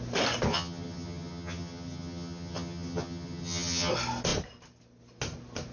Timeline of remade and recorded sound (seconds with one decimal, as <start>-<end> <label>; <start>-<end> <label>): 0.0-0.5 recorded; 0.5-3.9 remade; 3.9-5.7 recorded